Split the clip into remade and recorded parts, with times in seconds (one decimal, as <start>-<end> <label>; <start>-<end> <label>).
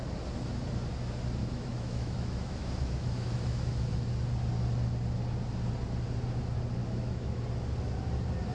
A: 0.0-1.4 recorded; 1.4-3.9 remade; 3.9-6.8 recorded; 6.8-7.4 remade; 7.4-8.5 recorded